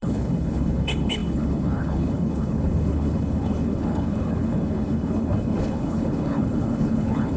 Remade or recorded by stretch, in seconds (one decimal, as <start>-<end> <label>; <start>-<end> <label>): 0.0-7.4 remade